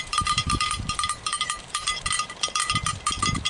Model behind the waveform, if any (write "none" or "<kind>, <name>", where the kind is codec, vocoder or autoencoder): vocoder, BigVGAN v2